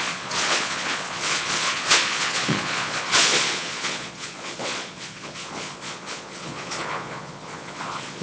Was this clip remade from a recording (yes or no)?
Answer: yes